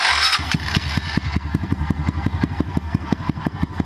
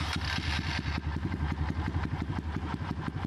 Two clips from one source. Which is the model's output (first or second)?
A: first